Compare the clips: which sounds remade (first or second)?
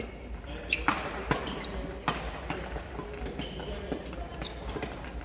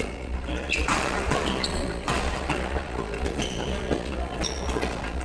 second